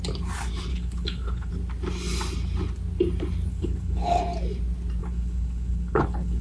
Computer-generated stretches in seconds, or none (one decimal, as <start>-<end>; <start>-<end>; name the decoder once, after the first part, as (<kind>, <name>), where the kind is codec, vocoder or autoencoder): 0.7-1.5 (codec, HILCodec); 3.5-4.2; 5.0-6.4